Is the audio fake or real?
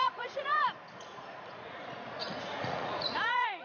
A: fake